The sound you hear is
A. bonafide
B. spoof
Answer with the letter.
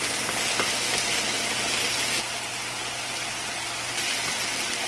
A